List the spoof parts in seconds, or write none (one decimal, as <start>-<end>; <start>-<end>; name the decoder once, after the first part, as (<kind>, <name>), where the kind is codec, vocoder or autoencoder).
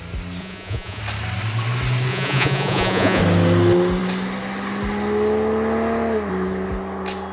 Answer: 0.4-1.0 (vocoder, Vocos); 2.1-3.2